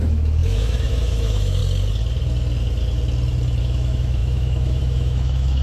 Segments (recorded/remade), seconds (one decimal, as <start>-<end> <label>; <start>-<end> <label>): 0.0-1.6 remade; 1.6-3.6 recorded; 3.6-5.6 remade